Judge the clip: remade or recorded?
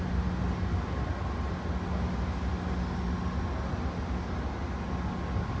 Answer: recorded